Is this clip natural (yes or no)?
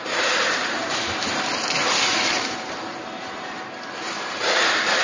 no